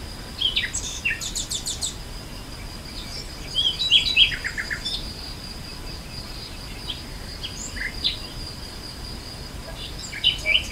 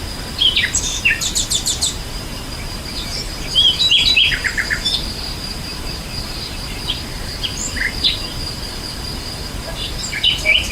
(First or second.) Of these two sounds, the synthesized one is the second